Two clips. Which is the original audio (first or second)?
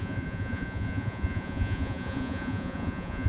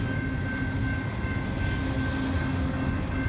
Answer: second